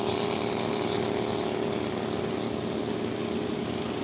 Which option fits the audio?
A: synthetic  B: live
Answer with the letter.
B